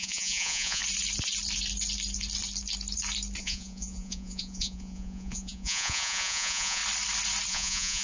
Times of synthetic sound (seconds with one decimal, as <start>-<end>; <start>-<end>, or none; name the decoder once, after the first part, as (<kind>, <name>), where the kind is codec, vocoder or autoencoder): 0.0-0.8 (vocoder, Vocos); 3.4-6.8; 7.5-8.0